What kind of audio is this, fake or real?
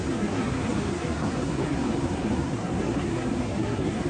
fake